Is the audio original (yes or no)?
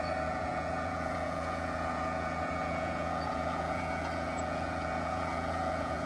no